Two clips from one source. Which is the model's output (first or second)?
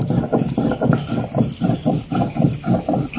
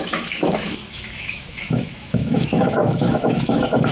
second